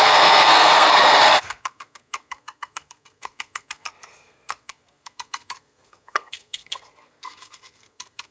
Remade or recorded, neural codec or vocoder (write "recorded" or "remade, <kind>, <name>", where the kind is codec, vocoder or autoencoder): remade, codec, SNAC